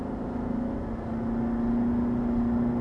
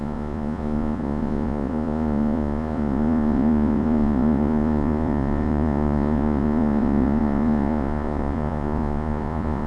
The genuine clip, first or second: first